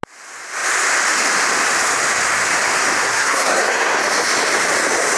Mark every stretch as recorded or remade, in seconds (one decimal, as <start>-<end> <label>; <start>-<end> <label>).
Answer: 0.0-3.0 recorded; 3.0-4.0 remade; 4.0-5.2 recorded